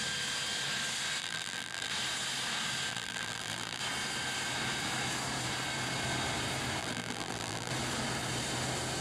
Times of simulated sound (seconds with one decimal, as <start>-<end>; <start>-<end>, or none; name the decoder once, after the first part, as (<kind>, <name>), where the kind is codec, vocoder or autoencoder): 1.2-1.9 (vocoder, BigVGAN v2); 2.9-3.8; 6.8-7.7